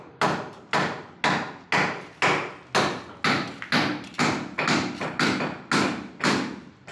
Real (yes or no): yes